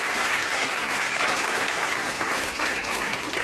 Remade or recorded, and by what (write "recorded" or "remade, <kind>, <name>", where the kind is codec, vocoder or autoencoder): remade, codec, SNAC